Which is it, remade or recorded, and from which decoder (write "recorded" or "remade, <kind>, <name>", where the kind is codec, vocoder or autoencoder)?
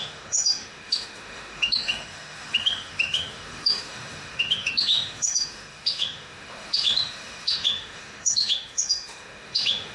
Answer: remade, autoencoder, DAC-VAE